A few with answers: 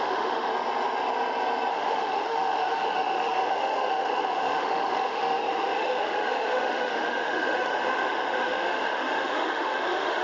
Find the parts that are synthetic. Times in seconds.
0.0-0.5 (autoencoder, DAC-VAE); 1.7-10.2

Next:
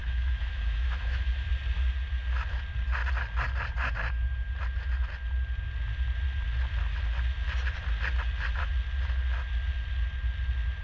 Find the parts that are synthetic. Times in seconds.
0.0-1.5 (autoencoder, DAC-VAE)

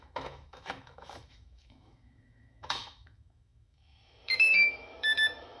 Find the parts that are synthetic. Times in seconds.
0.0-5.6 (autoencoder, DAC-VAE)

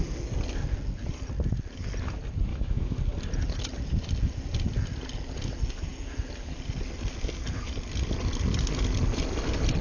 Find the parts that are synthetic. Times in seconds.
2.5-3.0 (autoencoder, DAC-VAE)

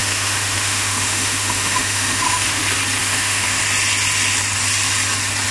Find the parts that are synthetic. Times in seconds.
0.0-2.6 (autoencoder, DAC-VAE); 3.0-3.6